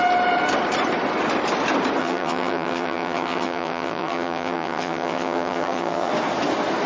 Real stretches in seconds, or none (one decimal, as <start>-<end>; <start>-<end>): 0.0-2.0; 6.1-6.9